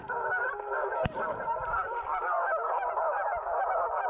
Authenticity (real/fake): real